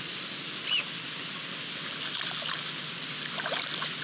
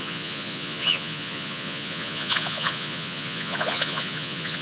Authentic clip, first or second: first